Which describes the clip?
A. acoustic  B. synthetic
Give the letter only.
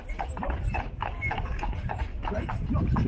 B